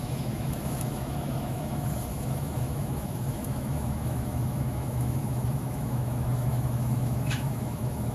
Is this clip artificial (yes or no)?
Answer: yes